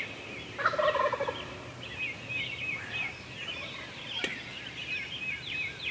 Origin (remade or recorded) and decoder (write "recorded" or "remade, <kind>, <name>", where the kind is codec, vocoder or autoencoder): recorded